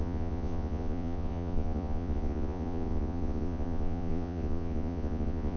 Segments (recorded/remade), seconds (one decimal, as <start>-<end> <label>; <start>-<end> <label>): 0.0-5.6 remade